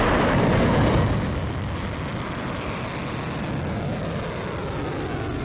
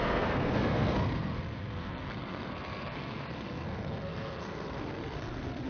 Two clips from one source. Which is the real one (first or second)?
first